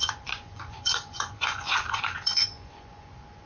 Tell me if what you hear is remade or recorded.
remade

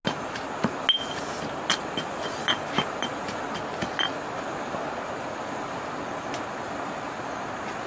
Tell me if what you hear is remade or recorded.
recorded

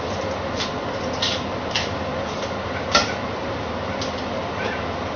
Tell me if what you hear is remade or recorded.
recorded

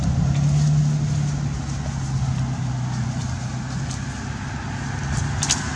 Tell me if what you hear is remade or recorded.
recorded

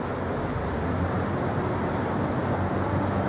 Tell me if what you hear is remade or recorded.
recorded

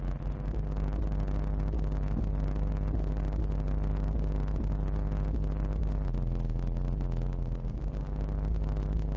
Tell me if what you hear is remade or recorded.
recorded